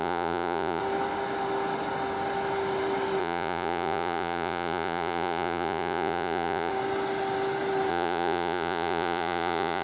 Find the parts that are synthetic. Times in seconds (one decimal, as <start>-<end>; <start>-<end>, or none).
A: 0.0-0.8; 3.2-6.7; 7.9-9.8